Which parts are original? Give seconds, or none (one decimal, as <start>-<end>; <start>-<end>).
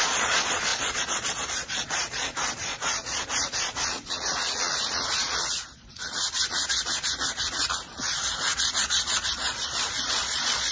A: none